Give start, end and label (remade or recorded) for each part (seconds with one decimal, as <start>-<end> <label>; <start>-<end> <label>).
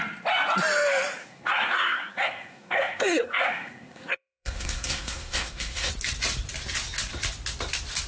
0.0-1.2 recorded; 1.2-5.9 remade; 5.9-8.1 recorded